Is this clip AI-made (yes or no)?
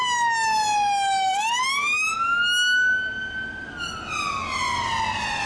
no